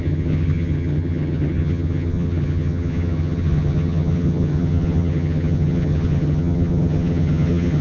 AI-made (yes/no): yes